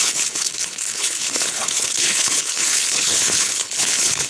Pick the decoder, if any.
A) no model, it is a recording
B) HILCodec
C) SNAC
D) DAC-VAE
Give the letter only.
B